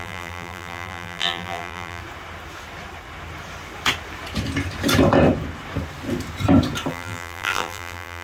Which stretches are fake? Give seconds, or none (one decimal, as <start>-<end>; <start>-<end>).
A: 0.0-2.0; 6.9-8.2